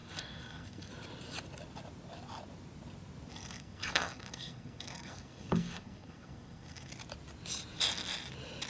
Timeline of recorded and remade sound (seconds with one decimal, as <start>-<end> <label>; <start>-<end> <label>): 0.0-0.9 remade; 0.9-3.3 recorded; 3.3-6.9 remade; 6.9-8.7 recorded